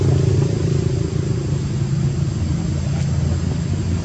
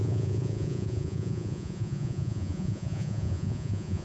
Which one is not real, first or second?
second